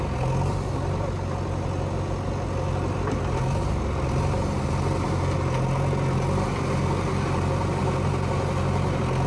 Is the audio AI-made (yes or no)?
no